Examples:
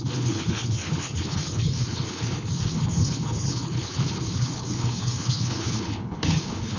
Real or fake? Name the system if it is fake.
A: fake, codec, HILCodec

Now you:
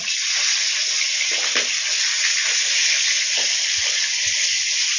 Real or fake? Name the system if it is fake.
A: real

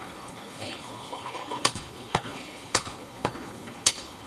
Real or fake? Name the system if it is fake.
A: fake, codec, HILCodec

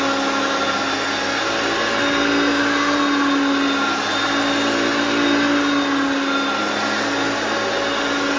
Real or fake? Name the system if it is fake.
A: real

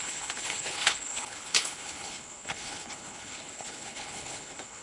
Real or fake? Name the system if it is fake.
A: fake, codec, HILCodec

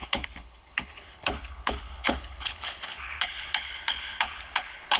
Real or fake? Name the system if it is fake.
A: fake, codec, HILCodec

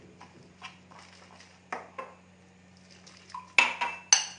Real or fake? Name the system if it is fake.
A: real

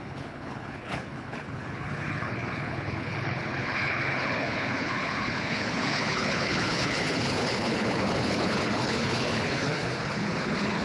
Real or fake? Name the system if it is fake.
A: fake, codec, HILCodec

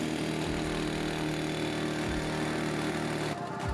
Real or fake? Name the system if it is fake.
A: real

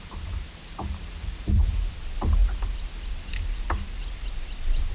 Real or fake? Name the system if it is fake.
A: real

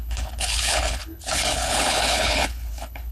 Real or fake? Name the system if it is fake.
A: fake, codec, HILCodec